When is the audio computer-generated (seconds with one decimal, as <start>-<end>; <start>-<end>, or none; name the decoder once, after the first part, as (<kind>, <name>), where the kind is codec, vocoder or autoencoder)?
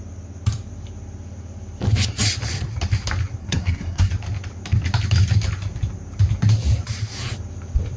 3.4-4.1 (codec, SNAC)